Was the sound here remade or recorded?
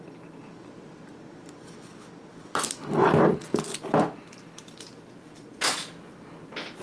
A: recorded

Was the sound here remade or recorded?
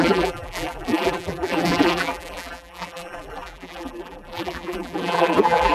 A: remade